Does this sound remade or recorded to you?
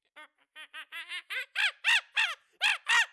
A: recorded